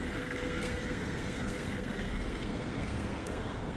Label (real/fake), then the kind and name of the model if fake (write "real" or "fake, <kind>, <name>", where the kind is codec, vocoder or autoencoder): fake, codec, SNAC